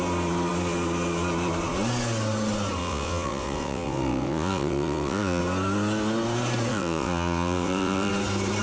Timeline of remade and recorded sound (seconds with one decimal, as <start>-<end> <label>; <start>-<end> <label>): 0.0-2.8 recorded; 2.8-5.4 remade; 5.4-6.7 recorded; 6.7-8.1 remade; 8.1-8.6 recorded